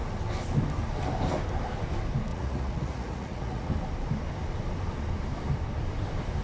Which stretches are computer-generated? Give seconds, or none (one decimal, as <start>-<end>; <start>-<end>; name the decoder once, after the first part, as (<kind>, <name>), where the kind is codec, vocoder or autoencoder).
2.3-3.7 (vocoder, Vocos)